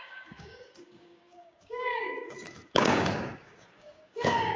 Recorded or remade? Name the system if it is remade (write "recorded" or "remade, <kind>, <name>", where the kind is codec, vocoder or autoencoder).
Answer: remade, codec, DAC